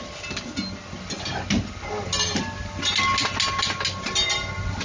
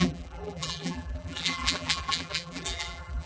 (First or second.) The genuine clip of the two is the first